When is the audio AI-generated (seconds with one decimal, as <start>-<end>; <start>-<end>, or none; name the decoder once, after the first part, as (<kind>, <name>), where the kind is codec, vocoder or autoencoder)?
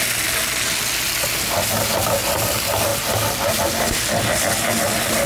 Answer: none